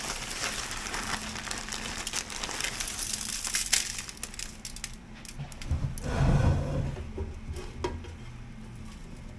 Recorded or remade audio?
recorded